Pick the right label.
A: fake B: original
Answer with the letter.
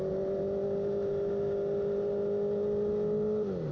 B